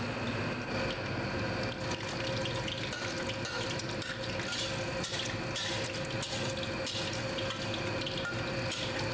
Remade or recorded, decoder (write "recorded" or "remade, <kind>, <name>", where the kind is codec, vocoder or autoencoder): recorded